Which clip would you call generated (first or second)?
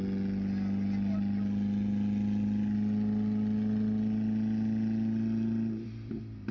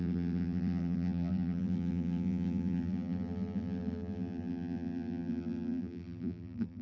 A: second